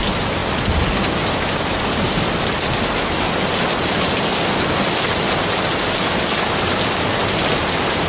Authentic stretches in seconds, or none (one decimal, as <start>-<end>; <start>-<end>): 0.0-8.1